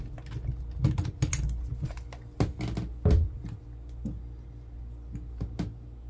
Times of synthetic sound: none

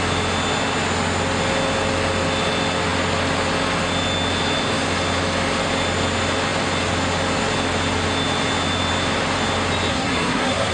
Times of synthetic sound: 9.9-10.7 (codec, SNAC)